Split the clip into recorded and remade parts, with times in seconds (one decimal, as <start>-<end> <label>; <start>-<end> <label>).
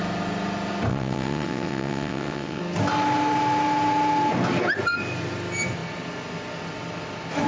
0.0-0.9 recorded; 0.9-2.6 remade; 2.6-7.5 recorded